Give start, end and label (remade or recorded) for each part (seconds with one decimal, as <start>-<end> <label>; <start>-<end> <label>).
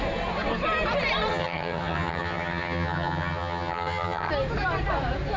0.0-1.3 recorded; 1.3-4.3 remade; 4.3-5.4 recorded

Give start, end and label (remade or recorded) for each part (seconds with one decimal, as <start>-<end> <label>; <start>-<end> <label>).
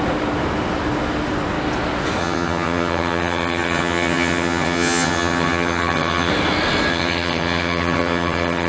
0.0-2.2 recorded; 2.2-6.3 remade; 6.3-6.9 recorded; 6.9-8.7 remade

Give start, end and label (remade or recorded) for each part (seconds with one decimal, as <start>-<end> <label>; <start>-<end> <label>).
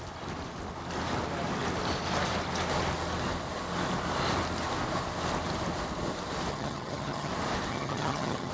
0.0-6.5 recorded; 6.5-7.3 remade; 7.3-7.7 recorded; 7.7-8.5 remade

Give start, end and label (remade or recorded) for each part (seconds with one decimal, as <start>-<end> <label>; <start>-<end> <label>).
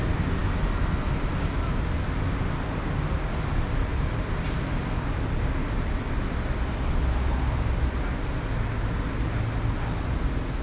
0.0-10.6 recorded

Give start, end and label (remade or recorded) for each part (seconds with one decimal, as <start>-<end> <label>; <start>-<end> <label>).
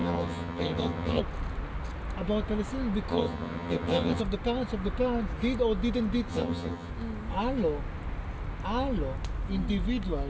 0.0-1.2 remade; 1.2-3.1 recorded; 3.1-4.2 remade; 4.2-6.3 recorded; 6.3-6.9 remade; 6.9-10.3 recorded